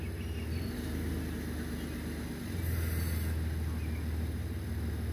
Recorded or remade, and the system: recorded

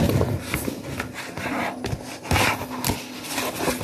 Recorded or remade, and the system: recorded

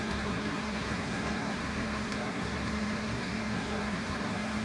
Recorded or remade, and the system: remade, codec, SNAC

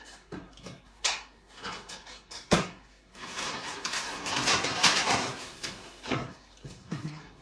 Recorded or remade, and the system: remade, codec, SNAC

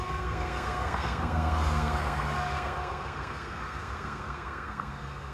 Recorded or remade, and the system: remade, codec, SNAC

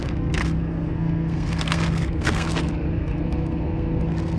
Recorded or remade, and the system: remade, codec, SNAC